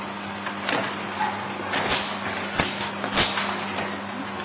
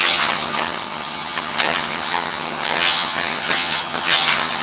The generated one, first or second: second